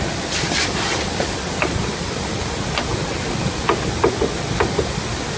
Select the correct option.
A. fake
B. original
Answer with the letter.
B